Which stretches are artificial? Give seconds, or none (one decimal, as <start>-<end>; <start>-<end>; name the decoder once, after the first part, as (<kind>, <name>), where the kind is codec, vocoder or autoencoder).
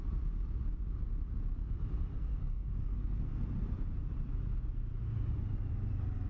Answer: 2.1-3.4 (codec, SNAC)